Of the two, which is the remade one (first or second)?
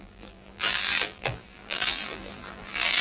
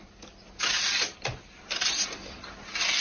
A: first